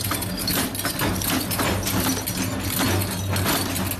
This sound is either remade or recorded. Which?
recorded